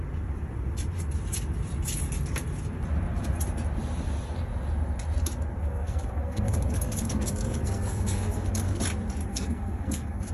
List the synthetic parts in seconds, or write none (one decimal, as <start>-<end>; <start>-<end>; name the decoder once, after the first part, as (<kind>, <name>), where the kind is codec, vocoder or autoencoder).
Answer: 5.6-8.8 (codec, SNAC); 9.3-10.3